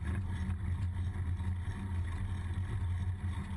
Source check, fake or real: real